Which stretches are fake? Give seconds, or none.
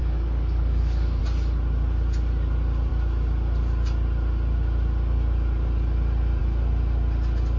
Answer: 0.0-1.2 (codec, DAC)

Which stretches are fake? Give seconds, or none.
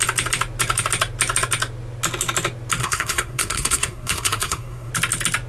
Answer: 2.8-4.9 (codec, SNAC)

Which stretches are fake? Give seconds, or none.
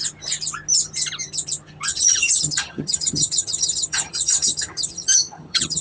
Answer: 1.9-5.8 (vocoder, HiFi-GAN)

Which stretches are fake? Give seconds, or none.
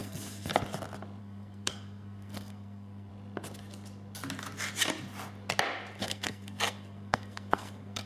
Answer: 0.0-0.5 (codec, SNAC); 1.2-3.1; 6.0-8.1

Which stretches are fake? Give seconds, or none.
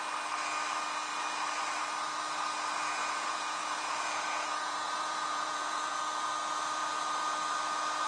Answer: 3.0-6.0 (vocoder, Vocos)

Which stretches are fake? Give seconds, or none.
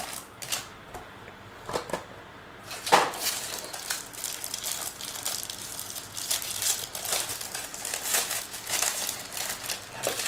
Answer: 8.1-9.0 (autoencoder, DAC-VAE)